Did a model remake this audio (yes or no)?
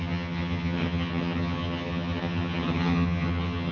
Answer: yes